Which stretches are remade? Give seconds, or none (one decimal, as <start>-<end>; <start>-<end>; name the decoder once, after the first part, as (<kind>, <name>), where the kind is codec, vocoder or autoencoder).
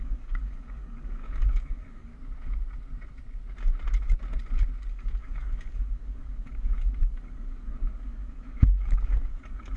0.0-2.1 (codec, DAC); 4.9-9.8